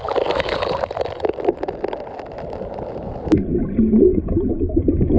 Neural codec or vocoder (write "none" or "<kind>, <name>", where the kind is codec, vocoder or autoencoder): vocoder, BigVGAN v2